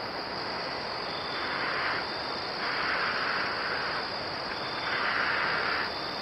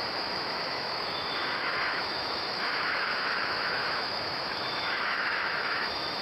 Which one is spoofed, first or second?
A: second